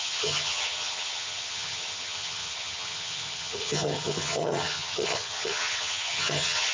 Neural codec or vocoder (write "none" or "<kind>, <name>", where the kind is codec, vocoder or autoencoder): vocoder, HiFi-GAN